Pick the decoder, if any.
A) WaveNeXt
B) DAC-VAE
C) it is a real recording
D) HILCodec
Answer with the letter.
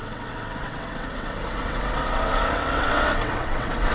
A